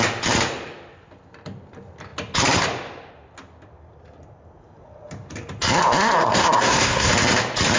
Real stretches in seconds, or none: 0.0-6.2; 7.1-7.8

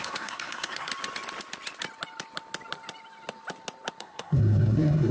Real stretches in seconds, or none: 0.9-4.0